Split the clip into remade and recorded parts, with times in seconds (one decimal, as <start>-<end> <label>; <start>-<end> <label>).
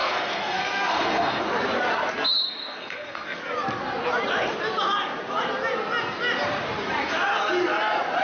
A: 0.0-1.4 remade; 1.4-2.6 recorded; 2.6-3.4 remade; 3.4-8.2 recorded